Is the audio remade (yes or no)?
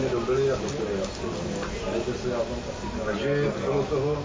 no